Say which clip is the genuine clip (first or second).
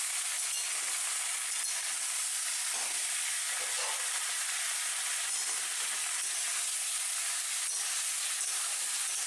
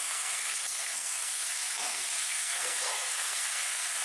first